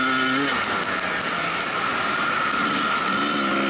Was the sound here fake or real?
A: real